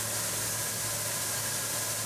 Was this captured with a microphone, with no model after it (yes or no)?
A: yes